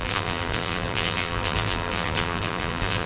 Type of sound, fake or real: fake